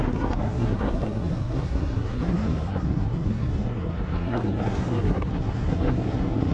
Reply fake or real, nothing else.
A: fake